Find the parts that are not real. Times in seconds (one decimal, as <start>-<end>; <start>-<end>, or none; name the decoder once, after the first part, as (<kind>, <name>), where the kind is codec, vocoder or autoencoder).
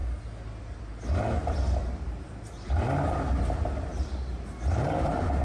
1.8-2.7 (vocoder, BigVGAN v2); 3.9-4.4